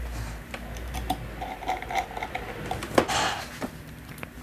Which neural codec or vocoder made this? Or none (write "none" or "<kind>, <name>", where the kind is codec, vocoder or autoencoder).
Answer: none